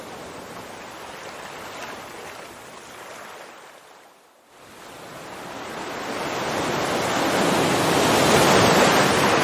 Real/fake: real